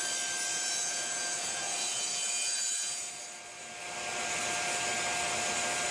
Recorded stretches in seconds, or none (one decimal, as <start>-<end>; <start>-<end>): 0.0-0.5; 3.1-5.9